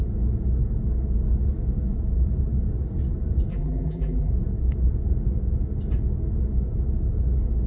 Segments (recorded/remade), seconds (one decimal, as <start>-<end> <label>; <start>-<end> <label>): 0.0-3.5 recorded; 3.5-4.3 remade; 4.3-7.7 recorded